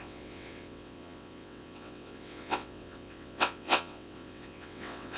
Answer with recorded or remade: remade